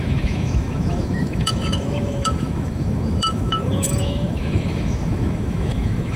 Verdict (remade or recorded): remade